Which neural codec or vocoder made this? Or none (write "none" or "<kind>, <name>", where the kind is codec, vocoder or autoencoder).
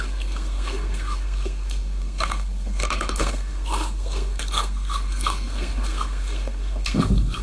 codec, SNAC